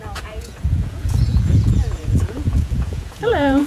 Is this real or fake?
fake